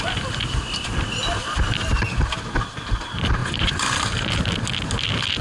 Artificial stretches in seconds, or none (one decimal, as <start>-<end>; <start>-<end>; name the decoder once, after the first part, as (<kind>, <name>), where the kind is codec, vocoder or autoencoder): 3.4-4.0 (vocoder, Vocos)